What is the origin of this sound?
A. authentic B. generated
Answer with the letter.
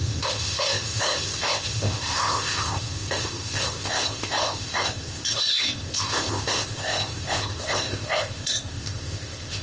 B